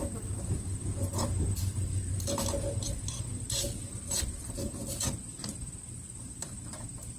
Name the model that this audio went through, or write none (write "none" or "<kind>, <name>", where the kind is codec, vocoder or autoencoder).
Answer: vocoder, BigVGAN v2